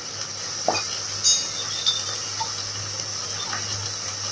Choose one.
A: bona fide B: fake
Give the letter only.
A